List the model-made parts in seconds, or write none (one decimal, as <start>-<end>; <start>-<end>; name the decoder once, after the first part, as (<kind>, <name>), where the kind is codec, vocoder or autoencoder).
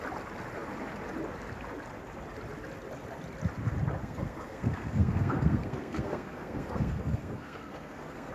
4.0-8.3 (codec, SNAC)